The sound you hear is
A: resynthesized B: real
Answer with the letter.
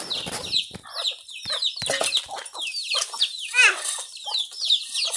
B